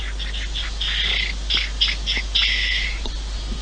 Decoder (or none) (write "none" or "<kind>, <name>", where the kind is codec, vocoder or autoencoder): none